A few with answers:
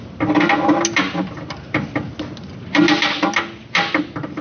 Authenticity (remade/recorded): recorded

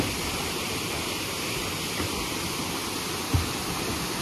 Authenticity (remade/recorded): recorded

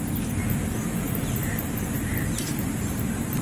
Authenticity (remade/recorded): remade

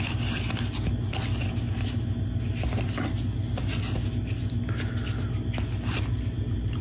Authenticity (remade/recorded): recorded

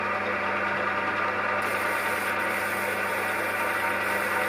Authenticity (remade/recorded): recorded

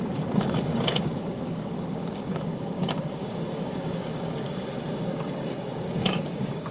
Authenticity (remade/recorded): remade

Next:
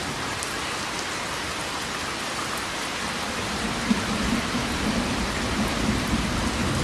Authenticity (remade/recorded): recorded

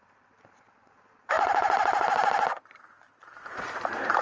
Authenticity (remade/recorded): remade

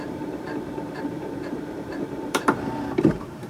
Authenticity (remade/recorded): remade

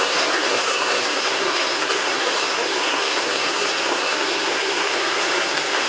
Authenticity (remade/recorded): remade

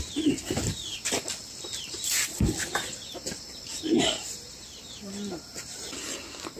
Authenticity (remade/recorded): remade